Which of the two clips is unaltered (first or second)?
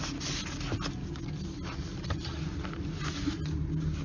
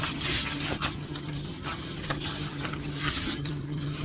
first